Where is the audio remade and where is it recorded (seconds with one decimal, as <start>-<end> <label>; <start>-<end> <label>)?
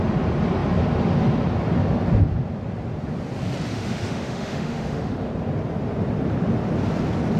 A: 0.0-3.7 recorded; 3.7-5.3 remade; 5.3-7.4 recorded